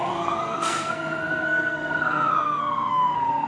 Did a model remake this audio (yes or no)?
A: yes